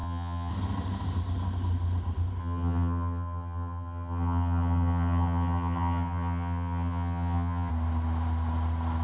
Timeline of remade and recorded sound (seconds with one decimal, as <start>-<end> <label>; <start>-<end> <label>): 0.0-0.5 remade; 0.5-2.4 recorded; 2.4-7.7 remade; 7.7-9.0 recorded